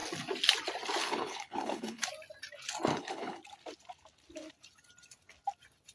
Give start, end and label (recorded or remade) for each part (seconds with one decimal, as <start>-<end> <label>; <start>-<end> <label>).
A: 0.0-1.0 recorded; 1.0-2.0 remade; 2.0-2.9 recorded; 2.9-3.4 remade; 3.4-5.9 recorded